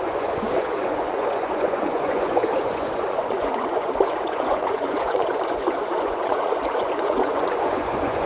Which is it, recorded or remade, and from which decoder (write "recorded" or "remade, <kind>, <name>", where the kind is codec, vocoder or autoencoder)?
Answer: remade, vocoder, Vocos